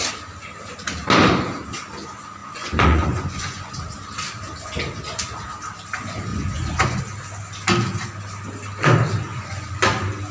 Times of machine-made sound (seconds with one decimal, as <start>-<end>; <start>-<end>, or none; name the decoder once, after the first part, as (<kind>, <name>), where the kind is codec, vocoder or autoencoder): 2.4-3.7 (vocoder, Vocos); 6.3-7.0; 9.3-9.8